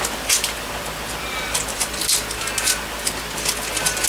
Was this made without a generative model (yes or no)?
yes